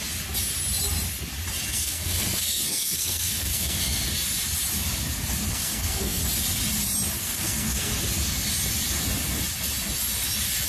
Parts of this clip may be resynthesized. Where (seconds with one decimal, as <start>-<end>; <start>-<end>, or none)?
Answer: 1.7-4.0; 5.5-6.2; 7.2-7.9